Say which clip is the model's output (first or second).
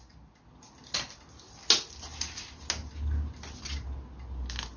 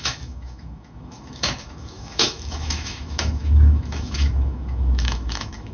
second